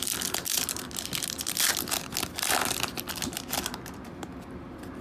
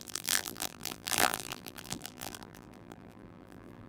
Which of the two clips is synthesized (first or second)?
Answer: second